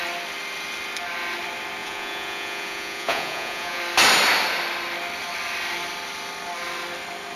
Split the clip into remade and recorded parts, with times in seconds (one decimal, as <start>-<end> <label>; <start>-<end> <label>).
0.0-1.8 recorded; 1.8-3.8 remade; 3.8-7.4 recorded